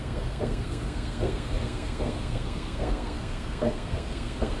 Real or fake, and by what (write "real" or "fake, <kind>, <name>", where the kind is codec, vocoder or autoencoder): fake, codec, SNAC